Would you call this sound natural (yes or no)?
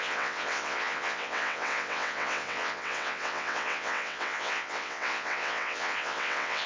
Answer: no